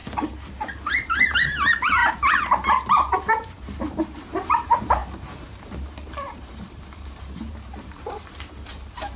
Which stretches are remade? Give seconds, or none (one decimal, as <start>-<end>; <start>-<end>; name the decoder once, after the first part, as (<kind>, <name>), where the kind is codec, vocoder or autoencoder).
0.7-9.2 (vocoder, BigVGAN v2)